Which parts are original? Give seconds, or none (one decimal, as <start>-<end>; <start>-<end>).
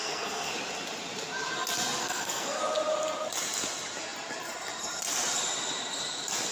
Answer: 0.5-2.0; 2.6-6.5